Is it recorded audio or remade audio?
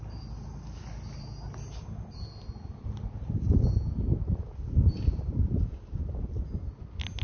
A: recorded